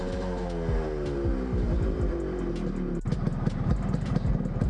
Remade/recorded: recorded